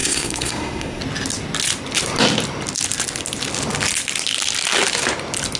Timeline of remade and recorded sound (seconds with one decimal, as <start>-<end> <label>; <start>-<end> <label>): 0.0-1.0 remade; 1.0-5.6 recorded